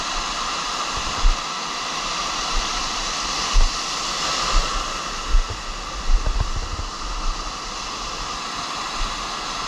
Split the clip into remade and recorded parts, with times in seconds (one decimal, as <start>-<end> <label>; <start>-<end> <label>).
0.0-1.9 recorded; 1.9-2.8 remade; 2.8-9.7 recorded